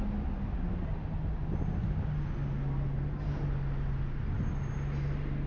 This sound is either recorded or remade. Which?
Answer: recorded